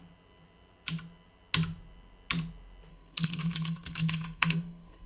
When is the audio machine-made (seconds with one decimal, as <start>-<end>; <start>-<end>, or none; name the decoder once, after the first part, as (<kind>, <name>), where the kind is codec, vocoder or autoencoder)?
2.9-5.1 (codec, SNAC)

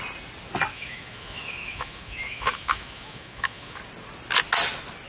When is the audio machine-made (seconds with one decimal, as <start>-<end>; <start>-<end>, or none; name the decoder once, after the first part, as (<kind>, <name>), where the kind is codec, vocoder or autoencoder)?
0.7-3.8 (autoencoder, DAC-VAE)

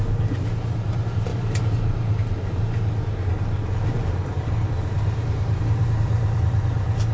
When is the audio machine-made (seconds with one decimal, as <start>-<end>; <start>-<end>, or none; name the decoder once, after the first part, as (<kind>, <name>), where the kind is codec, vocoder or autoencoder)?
0.0-7.1 (vocoder, BigVGAN v2)

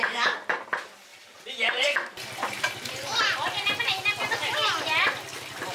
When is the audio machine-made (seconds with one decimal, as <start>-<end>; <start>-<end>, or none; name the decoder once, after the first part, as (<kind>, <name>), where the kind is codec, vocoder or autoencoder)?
1.1-3.7 (vocoder, BigVGAN v2)

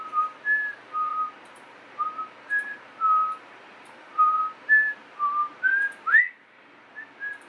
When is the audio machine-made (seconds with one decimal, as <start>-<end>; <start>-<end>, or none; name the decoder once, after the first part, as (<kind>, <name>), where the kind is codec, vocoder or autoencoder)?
1.1-5.6 (vocoder, BigVGAN v2)

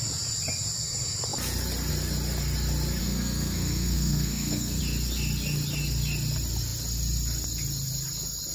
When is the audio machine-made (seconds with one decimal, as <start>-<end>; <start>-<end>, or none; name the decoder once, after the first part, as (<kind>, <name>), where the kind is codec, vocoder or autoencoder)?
3.0-4.8 (codec, SNAC)

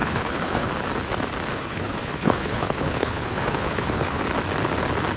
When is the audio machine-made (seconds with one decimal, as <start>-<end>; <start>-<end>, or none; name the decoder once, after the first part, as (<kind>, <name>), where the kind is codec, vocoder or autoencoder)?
0.0-0.7 (codec, HILCodec); 1.5-4.2

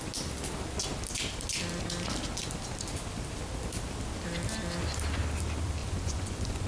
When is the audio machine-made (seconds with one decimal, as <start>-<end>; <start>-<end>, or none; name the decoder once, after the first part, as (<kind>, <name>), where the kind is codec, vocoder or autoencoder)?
5.8-6.7 (vocoder, Vocos)